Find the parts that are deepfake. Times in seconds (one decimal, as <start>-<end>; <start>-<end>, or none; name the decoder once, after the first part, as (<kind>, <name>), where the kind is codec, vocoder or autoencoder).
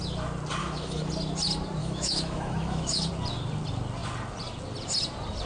0.6-1.1 (autoencoder, DAC-VAE); 1.8-3.1